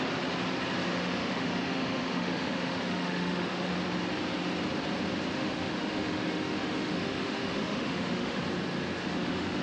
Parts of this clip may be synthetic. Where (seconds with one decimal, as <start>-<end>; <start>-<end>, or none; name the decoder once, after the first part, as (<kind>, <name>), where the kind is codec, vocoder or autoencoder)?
0.9-3.7 (autoencoder, DAC-VAE); 5.3-8.4; 9.0-9.6